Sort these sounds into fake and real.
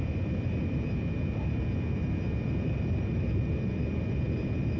real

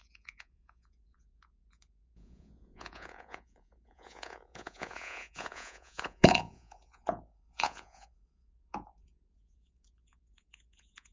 fake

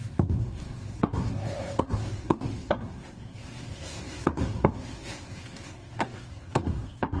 fake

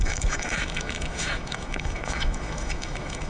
fake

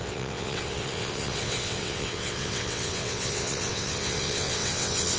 fake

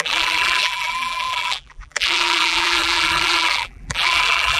fake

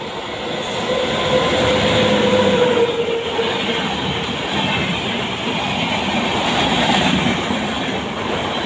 real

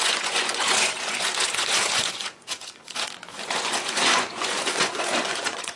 fake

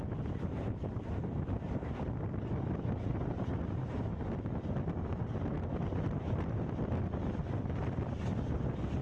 real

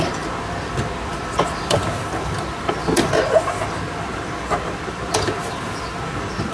real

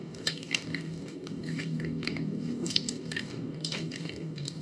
fake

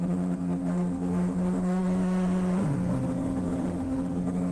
fake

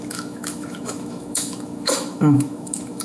fake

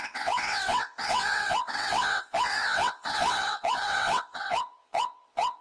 fake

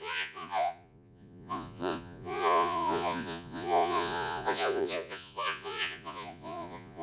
fake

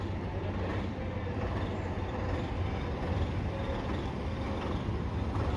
real